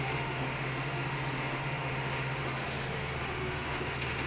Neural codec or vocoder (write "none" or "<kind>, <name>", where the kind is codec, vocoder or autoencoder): autoencoder, DAC-VAE